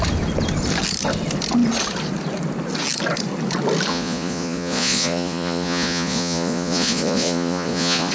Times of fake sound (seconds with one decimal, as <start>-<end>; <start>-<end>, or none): 3.9-8.1